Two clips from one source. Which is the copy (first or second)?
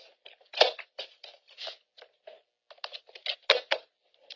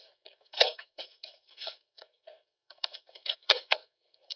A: second